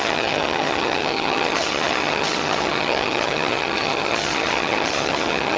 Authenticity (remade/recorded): remade